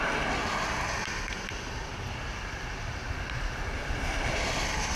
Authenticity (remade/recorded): recorded